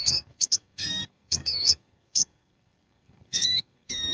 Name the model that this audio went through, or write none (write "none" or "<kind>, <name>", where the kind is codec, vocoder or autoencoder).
codec, SNAC